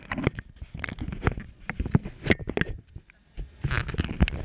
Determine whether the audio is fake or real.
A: real